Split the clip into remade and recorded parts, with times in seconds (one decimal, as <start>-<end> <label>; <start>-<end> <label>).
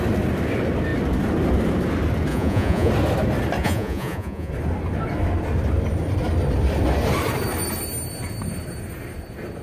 0.0-2.3 recorded; 2.3-2.9 remade; 2.9-3.6 recorded; 3.6-4.5 remade; 4.5-9.6 recorded